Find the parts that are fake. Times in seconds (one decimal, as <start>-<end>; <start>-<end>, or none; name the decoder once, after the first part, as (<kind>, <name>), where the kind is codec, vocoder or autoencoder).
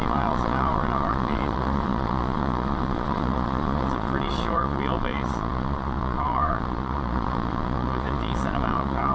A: 0.0-9.1 (vocoder, Vocos)